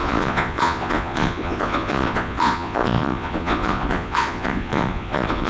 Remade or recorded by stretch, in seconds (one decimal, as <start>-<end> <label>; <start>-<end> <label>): 0.0-5.5 remade